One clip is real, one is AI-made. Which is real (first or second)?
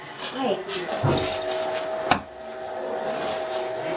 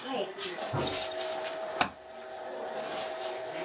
first